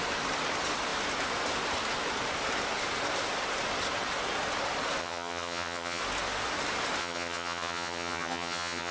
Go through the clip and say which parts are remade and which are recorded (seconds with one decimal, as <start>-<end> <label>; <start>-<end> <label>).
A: 0.0-5.0 recorded; 5.0-6.0 remade; 6.0-7.0 recorded; 7.0-8.9 remade

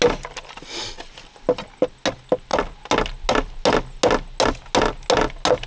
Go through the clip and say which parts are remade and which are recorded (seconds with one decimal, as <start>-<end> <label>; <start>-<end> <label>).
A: 0.0-5.7 recorded

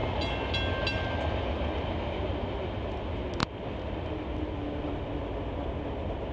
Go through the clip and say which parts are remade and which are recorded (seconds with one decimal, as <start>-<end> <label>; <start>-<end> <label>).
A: 0.0-6.3 recorded

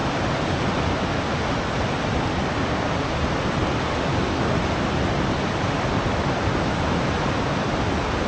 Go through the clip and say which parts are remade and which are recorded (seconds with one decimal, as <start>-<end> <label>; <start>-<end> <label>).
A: 0.0-8.3 recorded

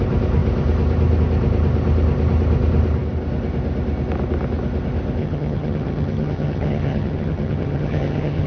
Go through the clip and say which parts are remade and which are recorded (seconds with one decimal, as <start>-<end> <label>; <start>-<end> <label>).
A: 0.0-5.2 recorded; 5.2-8.5 remade

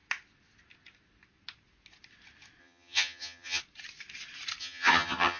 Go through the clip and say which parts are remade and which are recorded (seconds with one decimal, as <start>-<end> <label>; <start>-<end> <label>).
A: 0.0-2.6 recorded; 2.6-3.6 remade; 3.6-4.6 recorded; 4.6-5.4 remade